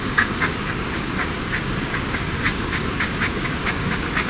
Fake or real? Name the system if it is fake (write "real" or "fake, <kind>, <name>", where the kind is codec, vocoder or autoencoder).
fake, codec, DAC